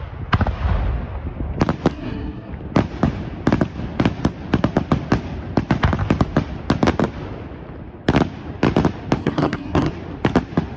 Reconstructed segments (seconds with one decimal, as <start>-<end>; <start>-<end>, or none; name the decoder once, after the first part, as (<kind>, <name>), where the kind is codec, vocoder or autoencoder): 1.9-2.5 (codec, SNAC); 9.2-9.9